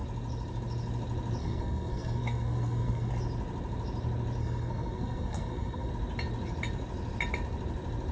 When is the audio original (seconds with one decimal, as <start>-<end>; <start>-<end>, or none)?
0.0-1.4; 3.1-4.4; 5.9-8.1